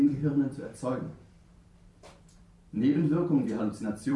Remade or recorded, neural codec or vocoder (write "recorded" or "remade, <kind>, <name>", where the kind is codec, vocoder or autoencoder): remade, vocoder, BigVGAN v2